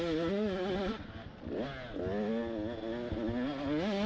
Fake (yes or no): no